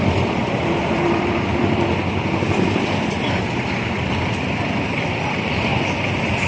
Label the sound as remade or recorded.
remade